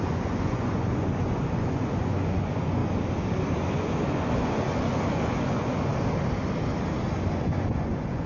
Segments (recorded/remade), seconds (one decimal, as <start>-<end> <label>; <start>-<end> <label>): 0.0-2.8 remade; 2.8-3.7 recorded; 3.7-5.9 remade; 5.9-7.1 recorded; 7.1-8.3 remade

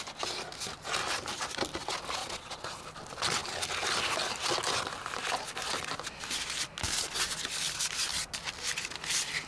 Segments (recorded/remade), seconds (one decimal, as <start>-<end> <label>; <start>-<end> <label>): 0.0-2.2 recorded; 2.2-2.8 remade; 2.8-9.5 recorded